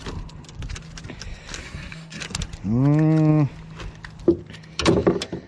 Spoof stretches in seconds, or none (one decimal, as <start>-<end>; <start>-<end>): 1.6-2.2